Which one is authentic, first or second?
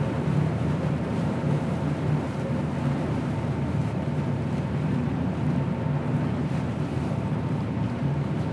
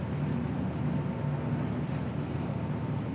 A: second